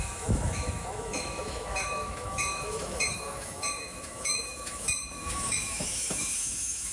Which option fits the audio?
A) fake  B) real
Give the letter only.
A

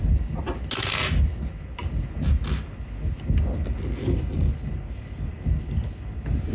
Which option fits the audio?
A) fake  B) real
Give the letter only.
B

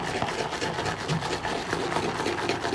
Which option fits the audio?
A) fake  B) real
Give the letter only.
B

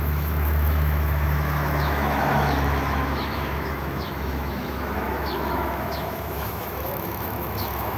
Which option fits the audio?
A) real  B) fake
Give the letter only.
B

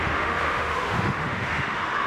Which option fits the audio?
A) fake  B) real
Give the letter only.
A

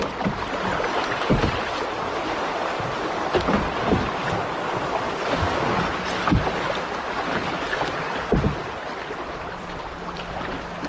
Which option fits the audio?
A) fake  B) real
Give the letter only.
B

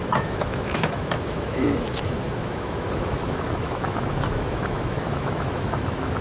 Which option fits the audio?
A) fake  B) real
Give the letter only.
A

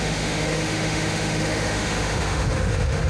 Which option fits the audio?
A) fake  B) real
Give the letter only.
A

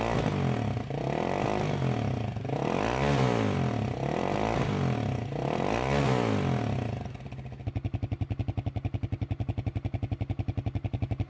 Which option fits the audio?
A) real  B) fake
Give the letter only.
A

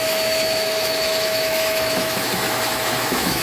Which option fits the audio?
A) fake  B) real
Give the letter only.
A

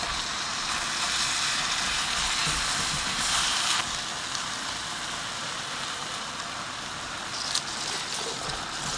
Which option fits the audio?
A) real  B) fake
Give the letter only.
A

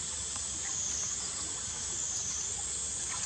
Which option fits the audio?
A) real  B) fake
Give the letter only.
A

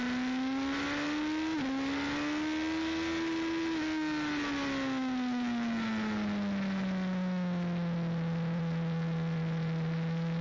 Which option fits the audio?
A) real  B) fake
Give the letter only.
A